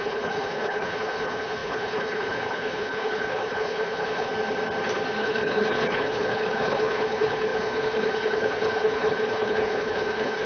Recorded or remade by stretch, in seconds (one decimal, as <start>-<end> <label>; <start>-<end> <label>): 0.0-4.3 remade; 4.3-5.2 recorded; 5.2-10.5 remade